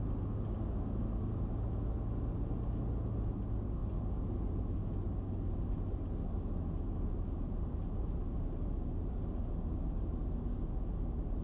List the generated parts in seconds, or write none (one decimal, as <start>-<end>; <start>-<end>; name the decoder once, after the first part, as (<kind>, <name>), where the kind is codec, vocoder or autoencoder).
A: none